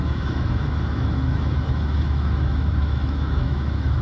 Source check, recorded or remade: remade